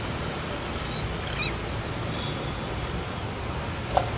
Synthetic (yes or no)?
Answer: no